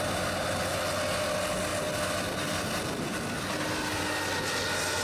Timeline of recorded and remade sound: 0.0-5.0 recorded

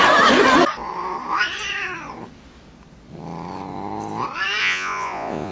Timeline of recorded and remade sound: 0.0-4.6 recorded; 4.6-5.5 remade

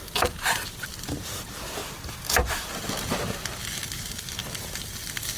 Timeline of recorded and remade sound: 0.0-5.4 recorded

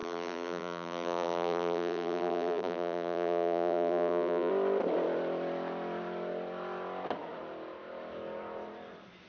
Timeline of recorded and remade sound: 0.0-4.5 remade; 4.5-9.3 recorded

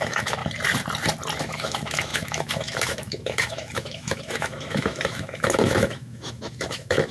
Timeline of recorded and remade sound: 0.0-0.4 remade; 0.4-1.4 recorded; 1.4-7.1 remade

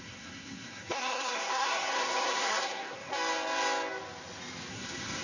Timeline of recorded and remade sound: 0.0-3.1 remade; 3.1-4.7 recorded; 4.7-5.2 remade

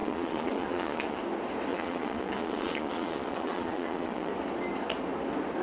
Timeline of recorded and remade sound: 0.0-1.2 remade; 1.2-1.7 recorded; 1.7-4.3 remade; 4.3-5.6 recorded